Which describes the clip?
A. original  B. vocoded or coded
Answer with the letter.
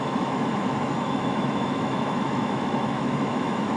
B